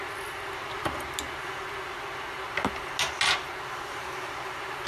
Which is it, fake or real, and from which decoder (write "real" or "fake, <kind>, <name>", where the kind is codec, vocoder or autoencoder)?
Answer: real